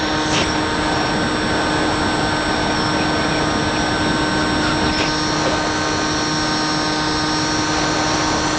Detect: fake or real real